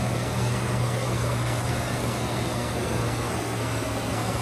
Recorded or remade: remade